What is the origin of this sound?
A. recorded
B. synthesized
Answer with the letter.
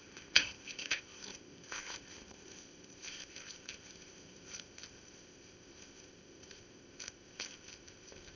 B